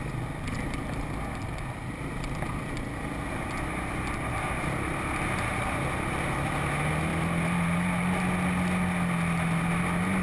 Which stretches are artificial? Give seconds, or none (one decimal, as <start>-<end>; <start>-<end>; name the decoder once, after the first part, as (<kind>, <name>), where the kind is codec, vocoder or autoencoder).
none